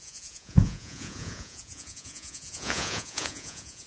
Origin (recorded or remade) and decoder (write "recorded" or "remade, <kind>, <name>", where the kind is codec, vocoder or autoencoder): remade, vocoder, Vocos